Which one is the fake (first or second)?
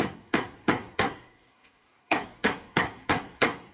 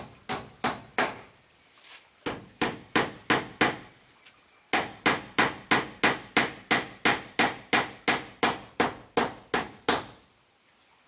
first